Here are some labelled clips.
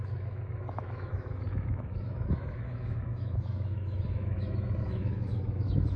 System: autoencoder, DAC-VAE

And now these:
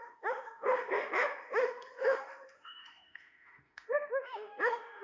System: autoencoder, DAC-VAE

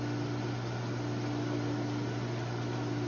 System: none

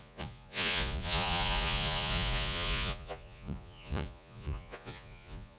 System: vocoder, Vocos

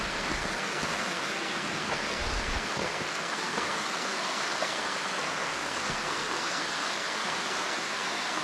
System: codec, SNAC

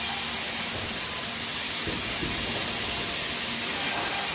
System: none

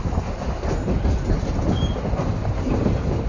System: none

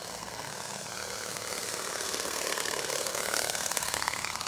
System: codec, SNAC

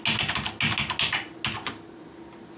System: none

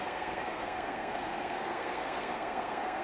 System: codec, SNAC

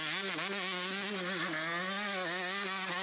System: none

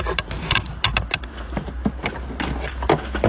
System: none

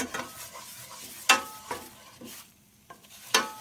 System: none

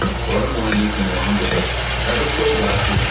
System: none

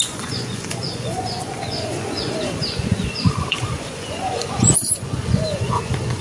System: vocoder, Vocos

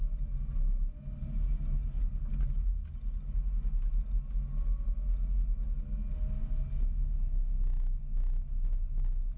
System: none